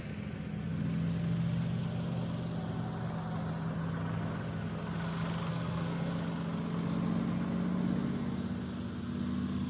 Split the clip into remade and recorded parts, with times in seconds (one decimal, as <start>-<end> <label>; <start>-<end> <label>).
0.0-5.5 recorded; 5.5-6.1 remade; 6.1-9.7 recorded